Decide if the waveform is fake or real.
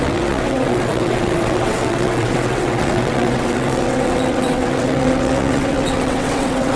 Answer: fake